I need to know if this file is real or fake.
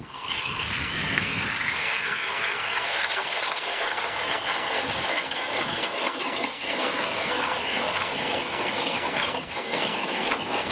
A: fake